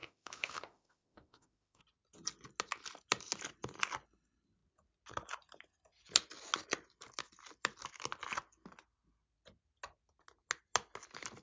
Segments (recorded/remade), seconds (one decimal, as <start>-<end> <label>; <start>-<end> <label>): 0.0-1.8 remade; 1.8-11.4 recorded

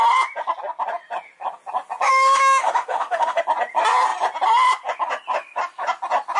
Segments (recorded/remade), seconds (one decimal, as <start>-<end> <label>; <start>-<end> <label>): 0.0-2.1 recorded; 2.1-3.4 remade; 3.4-6.4 recorded